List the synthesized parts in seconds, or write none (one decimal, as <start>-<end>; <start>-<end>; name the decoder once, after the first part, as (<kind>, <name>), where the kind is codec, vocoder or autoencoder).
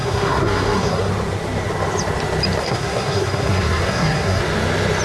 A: 0.0-1.1 (codec, SNAC); 2.6-4.4